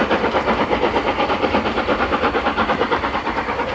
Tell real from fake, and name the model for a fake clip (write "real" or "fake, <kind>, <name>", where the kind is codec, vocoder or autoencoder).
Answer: real